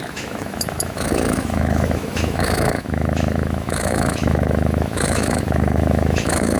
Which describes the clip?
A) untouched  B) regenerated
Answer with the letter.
B